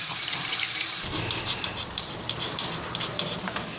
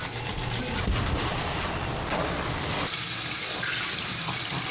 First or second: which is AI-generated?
first